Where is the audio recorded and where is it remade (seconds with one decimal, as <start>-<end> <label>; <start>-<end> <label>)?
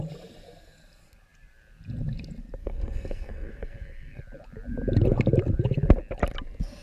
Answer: 0.0-2.6 recorded; 2.6-4.2 remade; 4.2-6.8 recorded